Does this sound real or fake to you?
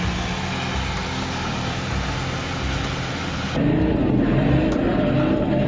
real